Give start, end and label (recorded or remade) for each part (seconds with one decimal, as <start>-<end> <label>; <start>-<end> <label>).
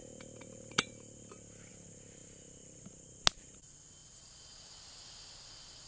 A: 0.0-4.0 recorded; 4.0-4.6 remade; 4.6-5.9 recorded